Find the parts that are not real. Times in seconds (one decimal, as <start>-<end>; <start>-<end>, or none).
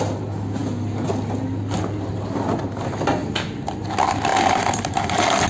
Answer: none